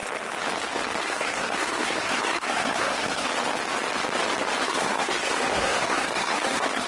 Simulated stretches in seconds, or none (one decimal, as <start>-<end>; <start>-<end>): 1.0-3.3; 4.6-6.9